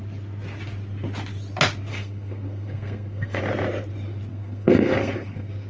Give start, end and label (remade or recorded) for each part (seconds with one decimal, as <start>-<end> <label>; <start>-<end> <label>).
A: 0.0-1.9 recorded; 1.9-3.4 remade; 3.4-4.3 recorded; 4.3-5.7 remade